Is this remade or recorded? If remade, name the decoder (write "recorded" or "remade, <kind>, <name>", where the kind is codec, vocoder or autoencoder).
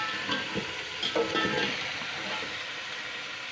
recorded